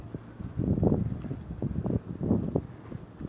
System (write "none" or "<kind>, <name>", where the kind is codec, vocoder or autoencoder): none